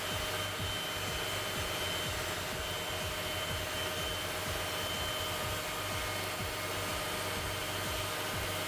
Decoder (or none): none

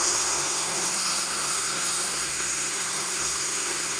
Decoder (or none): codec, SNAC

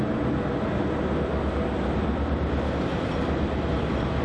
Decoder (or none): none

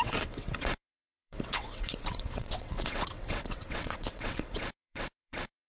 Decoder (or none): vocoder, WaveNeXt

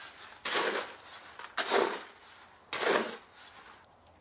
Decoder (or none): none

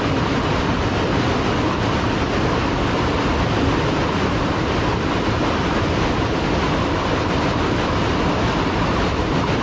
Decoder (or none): none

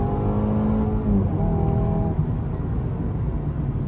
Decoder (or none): none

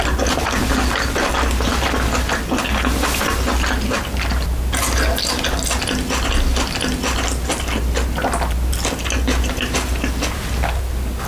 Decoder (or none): none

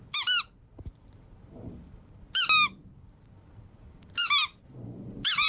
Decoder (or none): none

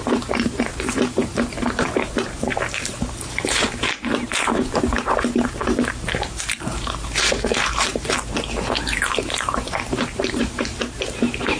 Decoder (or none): vocoder, BigVGAN v2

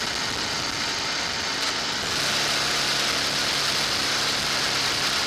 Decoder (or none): none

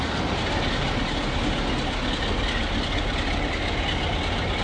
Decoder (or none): none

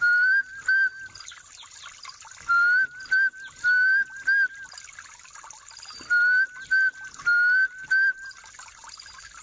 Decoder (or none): none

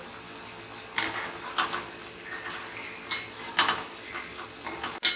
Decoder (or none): none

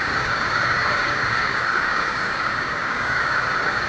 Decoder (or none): codec, DAC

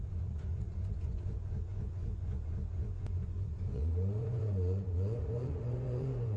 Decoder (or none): vocoder, Vocos